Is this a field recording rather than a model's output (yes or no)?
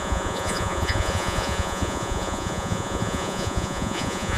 no